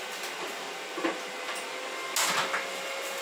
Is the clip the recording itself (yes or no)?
yes